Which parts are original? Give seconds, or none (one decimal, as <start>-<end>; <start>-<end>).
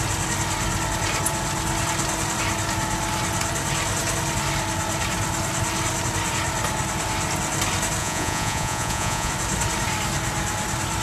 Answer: 0.0-8.0; 9.3-11.0